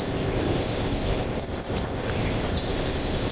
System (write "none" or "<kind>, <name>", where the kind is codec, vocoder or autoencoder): codec, ZipCodec